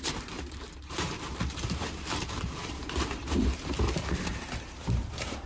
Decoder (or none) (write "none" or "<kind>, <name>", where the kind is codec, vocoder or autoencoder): vocoder, BigVGAN v2